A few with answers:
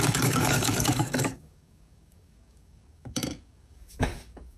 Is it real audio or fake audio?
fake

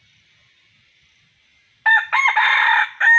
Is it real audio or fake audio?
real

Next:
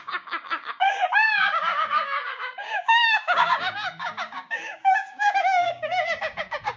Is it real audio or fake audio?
fake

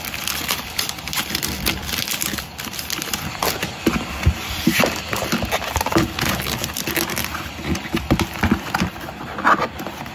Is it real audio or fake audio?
real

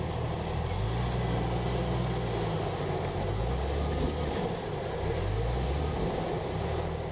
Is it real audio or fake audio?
real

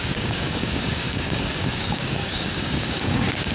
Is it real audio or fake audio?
fake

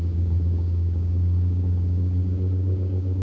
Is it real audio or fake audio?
fake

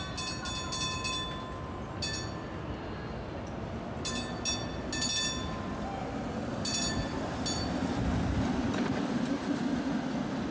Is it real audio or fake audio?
real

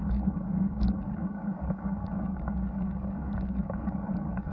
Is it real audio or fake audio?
fake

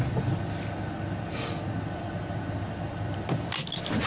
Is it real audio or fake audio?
real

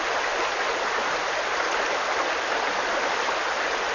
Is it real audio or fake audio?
real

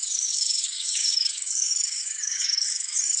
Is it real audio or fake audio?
fake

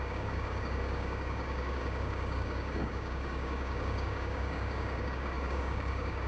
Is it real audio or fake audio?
fake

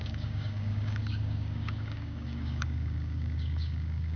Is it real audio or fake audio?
fake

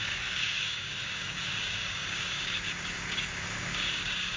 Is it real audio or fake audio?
fake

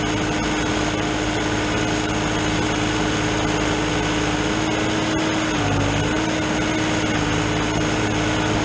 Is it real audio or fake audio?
real